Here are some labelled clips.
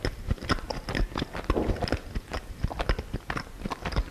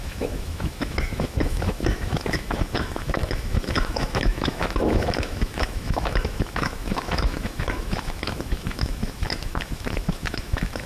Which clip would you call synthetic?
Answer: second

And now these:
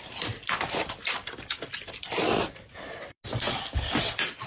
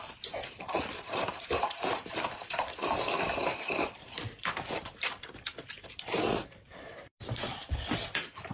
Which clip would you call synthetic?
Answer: second